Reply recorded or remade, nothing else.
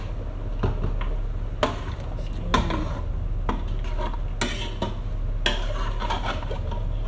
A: recorded